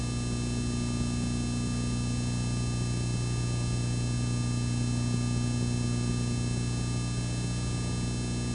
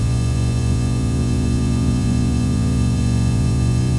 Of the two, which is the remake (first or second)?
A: second